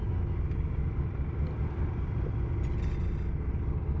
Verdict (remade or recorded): recorded